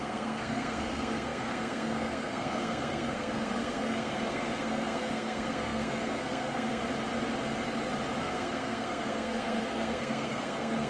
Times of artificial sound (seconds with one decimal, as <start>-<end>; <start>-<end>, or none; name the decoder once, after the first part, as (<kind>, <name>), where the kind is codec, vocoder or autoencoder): 0.0-6.8 (codec, SNAC); 8.2-10.9